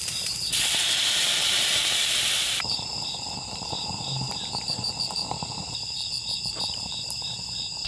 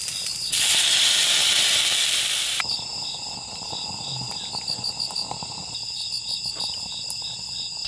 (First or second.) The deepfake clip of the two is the first